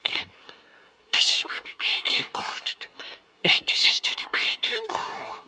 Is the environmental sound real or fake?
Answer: fake